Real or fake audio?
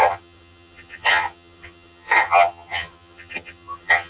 fake